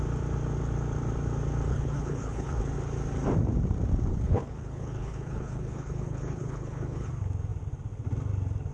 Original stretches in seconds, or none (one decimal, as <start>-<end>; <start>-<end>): 0.0-1.7; 2.6-4.1; 7.1-8.7